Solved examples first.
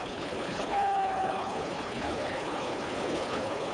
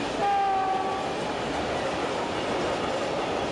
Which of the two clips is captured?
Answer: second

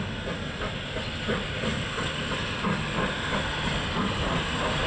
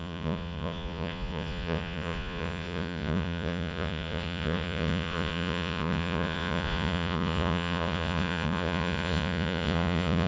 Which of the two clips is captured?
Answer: first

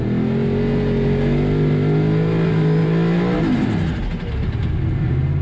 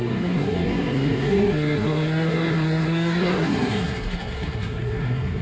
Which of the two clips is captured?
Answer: first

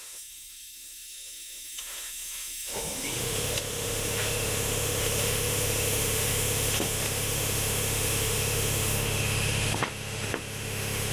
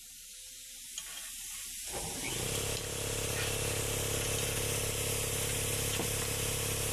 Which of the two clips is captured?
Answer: second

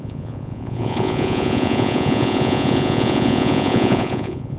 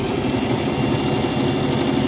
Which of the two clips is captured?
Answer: second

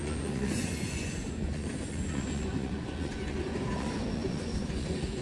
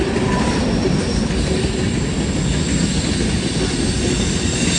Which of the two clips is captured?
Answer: second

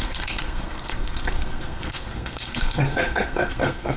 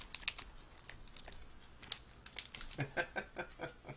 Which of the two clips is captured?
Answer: second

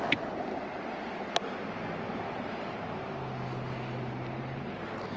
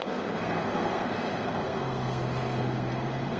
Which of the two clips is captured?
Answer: first